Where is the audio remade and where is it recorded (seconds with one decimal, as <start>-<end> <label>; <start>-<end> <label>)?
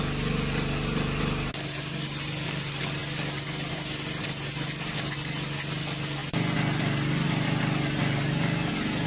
0.0-9.1 recorded